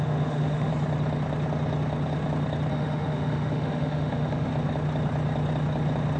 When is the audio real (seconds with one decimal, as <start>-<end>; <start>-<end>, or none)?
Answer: 0.7-2.7; 4.5-6.2

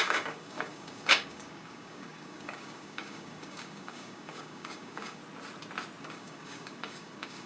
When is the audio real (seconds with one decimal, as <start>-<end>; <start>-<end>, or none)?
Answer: 5.2-6.0

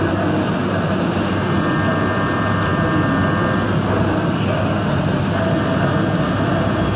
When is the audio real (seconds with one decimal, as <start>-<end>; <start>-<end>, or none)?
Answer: 0.0-7.0

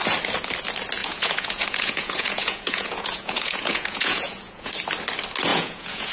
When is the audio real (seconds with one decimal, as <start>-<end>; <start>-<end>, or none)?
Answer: 0.0-1.0; 4.7-5.5

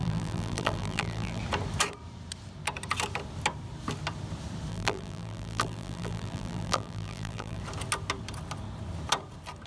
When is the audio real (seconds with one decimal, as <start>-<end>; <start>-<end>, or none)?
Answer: 1.4-4.7; 7.6-9.7